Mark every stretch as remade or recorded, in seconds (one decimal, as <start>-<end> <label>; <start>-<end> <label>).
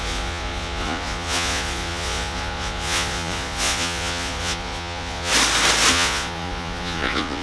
0.0-5.3 remade; 5.3-5.9 recorded; 5.9-7.4 remade